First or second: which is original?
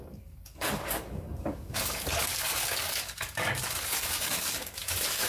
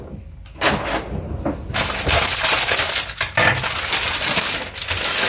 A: second